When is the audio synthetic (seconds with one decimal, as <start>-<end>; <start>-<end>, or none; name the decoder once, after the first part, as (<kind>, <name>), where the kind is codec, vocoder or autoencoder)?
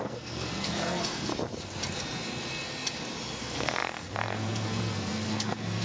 0.0-1.3 (codec, SNAC); 3.4-5.8